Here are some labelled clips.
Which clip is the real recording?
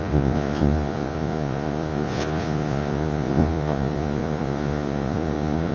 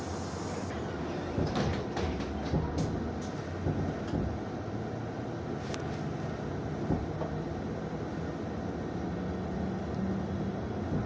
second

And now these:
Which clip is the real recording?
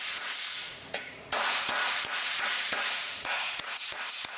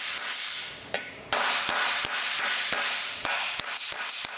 second